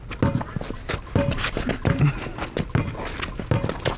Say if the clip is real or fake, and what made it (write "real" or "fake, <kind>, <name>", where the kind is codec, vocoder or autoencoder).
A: real